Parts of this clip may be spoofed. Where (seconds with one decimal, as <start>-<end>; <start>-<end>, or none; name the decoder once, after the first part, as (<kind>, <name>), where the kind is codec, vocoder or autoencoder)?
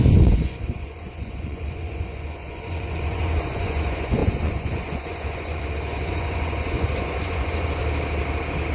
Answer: 0.0-7.8 (vocoder, Vocos)